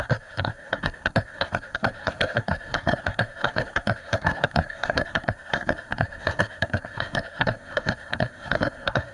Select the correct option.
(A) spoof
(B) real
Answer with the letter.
A